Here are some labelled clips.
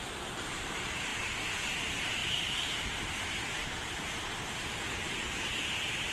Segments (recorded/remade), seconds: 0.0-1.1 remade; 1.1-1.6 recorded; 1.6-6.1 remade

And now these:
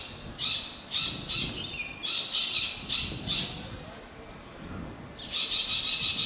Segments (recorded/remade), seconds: 0.0-6.3 recorded

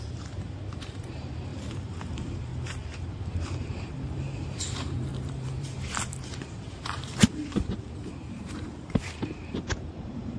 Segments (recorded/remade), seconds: 0.0-2.5 remade; 2.5-3.1 recorded; 3.1-10.4 remade

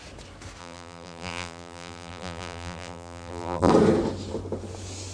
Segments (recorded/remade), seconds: 0.0-0.6 recorded; 0.6-3.7 remade; 3.7-5.1 recorded

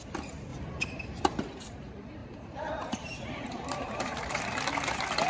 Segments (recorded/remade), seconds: 0.0-0.5 recorded; 0.5-1.4 remade; 1.4-2.2 recorded; 2.2-4.4 remade; 4.4-5.3 recorded

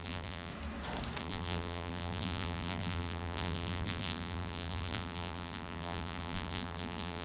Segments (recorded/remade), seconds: 0.0-0.5 remade; 0.5-1.2 recorded; 1.2-7.2 remade